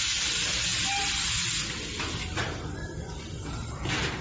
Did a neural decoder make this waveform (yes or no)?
no